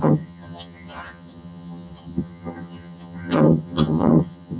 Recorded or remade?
remade